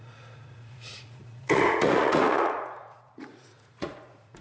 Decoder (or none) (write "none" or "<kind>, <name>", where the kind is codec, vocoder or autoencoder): vocoder, Vocos